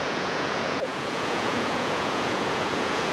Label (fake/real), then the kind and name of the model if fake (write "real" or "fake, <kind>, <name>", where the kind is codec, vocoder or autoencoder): fake, vocoder, Vocos